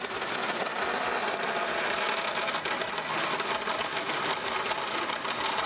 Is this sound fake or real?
real